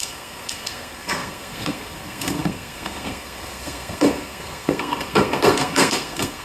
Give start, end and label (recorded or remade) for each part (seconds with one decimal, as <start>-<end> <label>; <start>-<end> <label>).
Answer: 0.0-6.4 remade